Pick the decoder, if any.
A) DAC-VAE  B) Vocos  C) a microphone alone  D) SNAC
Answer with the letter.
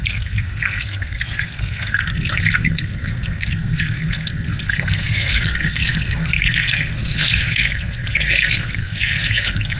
D